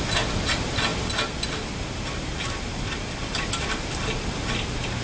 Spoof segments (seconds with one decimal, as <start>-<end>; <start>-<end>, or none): none